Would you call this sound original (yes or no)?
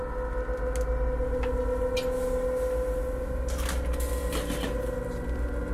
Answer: yes